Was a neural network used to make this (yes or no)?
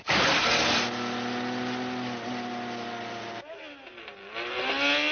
no